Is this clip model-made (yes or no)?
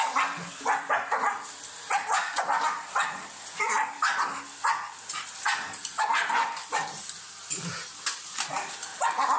yes